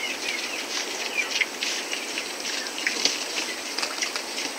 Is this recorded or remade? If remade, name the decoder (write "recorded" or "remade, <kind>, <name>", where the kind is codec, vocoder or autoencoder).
recorded